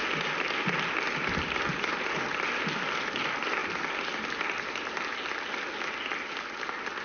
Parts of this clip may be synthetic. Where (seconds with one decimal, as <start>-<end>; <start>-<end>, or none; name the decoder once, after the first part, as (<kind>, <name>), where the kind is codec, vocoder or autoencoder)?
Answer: none